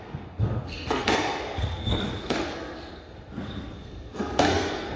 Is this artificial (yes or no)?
yes